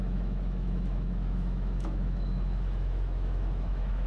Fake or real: fake